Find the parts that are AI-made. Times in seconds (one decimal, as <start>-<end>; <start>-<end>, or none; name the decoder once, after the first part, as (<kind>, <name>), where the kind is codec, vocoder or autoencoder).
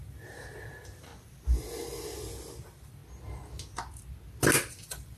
0.0-1.1 (vocoder, BigVGAN v2); 2.6-3.0; 4.7-5.2